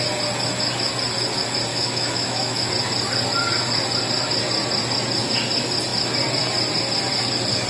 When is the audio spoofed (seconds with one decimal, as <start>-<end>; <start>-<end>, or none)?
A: 1.7-2.7